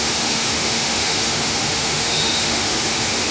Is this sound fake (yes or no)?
yes